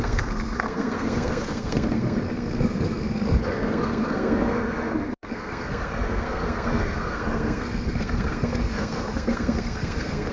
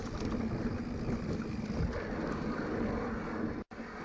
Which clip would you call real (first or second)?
second